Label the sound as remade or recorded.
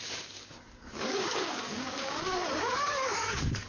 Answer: remade